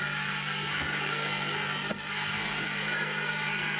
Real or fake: fake